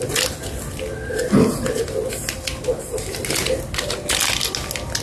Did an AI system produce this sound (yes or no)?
no